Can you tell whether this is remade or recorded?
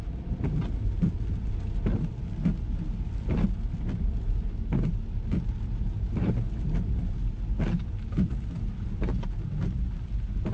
recorded